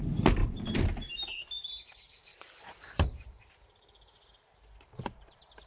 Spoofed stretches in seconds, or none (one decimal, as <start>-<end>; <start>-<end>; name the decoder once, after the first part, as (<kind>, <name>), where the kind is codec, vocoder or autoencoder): none